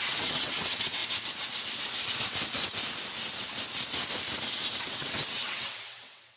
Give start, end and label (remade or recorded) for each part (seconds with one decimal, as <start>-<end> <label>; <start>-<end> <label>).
0.0-1.0 remade; 1.0-4.8 recorded; 4.8-6.4 remade